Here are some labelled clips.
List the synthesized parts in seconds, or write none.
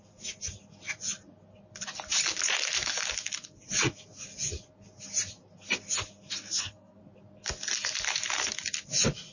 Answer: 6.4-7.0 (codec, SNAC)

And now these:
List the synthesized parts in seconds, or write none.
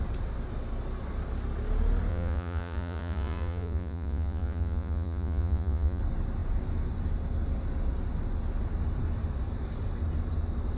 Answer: 2.1-6.0 (vocoder, Vocos)